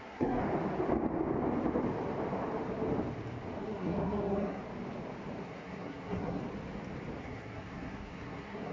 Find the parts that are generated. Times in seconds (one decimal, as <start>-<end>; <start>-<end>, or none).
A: 0.0-0.4; 3.6-4.6; 5.4-6.4; 7.2-8.7